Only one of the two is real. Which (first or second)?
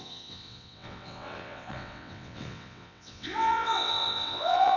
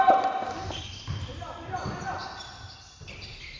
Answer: second